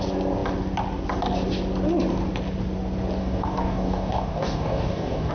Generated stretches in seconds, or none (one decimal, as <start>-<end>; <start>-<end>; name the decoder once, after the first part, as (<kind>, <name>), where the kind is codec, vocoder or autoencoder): 3.2-5.3 (codec, DAC)

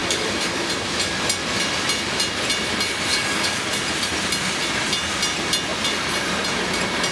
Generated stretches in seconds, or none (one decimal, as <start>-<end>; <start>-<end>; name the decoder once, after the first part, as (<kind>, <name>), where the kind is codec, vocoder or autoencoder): 0.0-0.6 (codec, DAC); 3.1-3.6

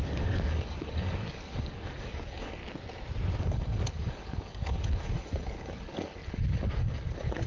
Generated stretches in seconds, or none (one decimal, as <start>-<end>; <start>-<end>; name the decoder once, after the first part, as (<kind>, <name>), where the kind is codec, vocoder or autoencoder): 0.0-2.6 (codec, DAC); 3.4-7.5

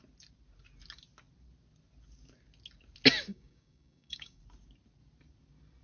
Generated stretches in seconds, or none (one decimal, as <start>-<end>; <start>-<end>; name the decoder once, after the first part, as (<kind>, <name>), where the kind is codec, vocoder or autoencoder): 3.3-4.4 (codec, DAC)

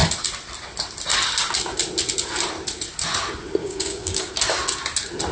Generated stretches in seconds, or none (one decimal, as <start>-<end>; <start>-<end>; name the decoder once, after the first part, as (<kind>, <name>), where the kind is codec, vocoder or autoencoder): 3.6-4.3 (codec, DAC)

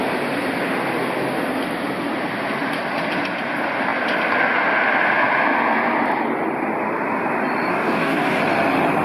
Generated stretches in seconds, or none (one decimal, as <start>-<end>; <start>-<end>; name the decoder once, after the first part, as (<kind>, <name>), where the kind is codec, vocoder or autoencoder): 7.7-8.4 (codec, DAC)

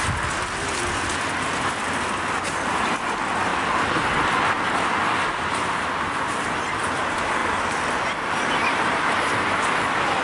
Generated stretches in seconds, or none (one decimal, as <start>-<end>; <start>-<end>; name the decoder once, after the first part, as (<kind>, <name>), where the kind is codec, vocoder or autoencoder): none

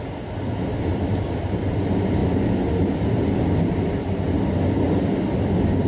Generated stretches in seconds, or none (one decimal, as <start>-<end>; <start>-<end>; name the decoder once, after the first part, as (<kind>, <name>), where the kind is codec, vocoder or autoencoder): none